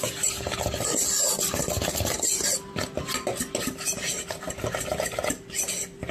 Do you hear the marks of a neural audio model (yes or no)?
no